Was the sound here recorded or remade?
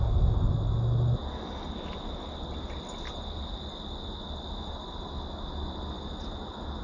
recorded